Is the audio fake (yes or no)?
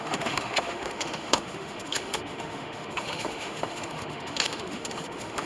yes